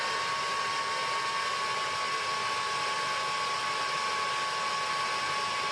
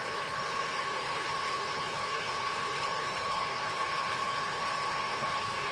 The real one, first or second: first